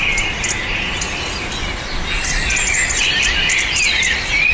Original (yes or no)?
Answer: yes